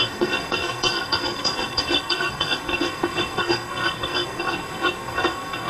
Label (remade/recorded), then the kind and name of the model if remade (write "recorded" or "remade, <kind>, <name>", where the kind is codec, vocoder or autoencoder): remade, codec, SNAC